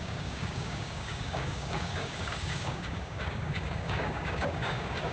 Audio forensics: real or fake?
fake